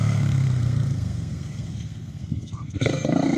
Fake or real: fake